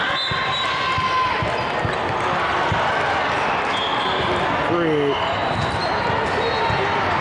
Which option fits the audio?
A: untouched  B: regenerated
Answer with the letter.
A